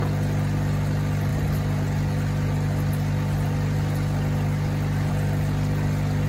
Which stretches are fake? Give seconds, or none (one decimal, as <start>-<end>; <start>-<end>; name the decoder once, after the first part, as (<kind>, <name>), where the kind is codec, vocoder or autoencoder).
none